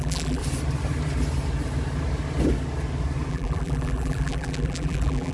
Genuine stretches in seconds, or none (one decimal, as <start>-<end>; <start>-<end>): 0.4-3.3